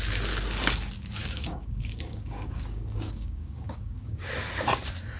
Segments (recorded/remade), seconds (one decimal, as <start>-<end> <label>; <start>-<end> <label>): 0.0-1.2 recorded; 1.2-4.3 remade; 4.3-5.2 recorded